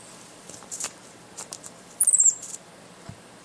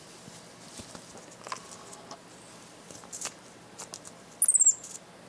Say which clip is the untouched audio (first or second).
second